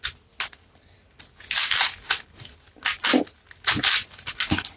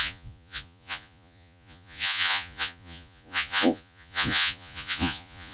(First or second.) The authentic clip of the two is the first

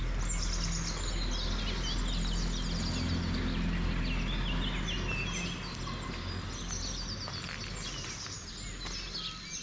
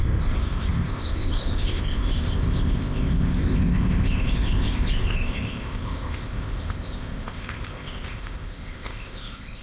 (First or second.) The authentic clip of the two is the first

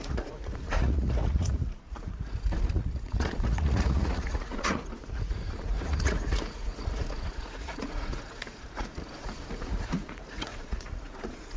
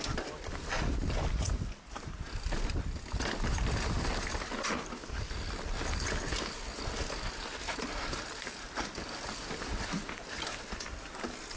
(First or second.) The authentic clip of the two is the second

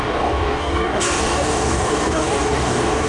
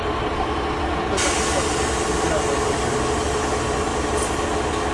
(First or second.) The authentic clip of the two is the second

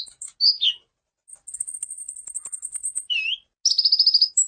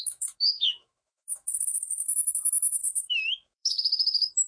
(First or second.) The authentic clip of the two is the first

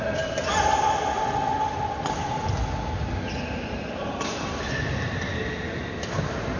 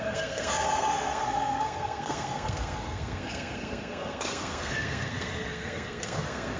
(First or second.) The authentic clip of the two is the first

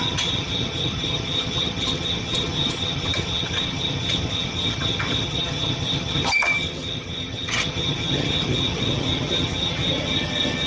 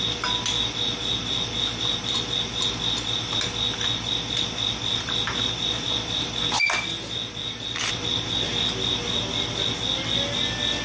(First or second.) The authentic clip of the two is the second